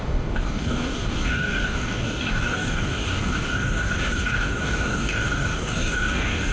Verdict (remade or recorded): remade